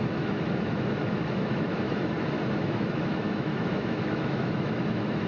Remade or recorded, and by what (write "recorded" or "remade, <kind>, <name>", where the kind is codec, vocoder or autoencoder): remade, autoencoder, DAC-VAE